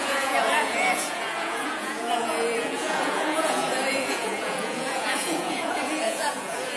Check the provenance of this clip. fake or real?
fake